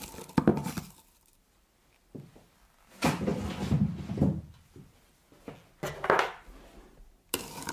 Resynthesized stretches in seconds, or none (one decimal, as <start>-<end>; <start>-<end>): none